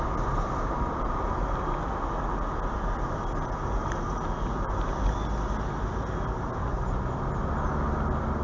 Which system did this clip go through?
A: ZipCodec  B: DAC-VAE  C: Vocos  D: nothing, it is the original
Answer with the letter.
D